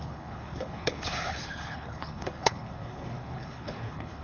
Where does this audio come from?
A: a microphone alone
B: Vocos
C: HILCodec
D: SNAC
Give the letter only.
C